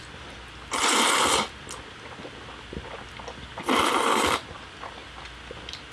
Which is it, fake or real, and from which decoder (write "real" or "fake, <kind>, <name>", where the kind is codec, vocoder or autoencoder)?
real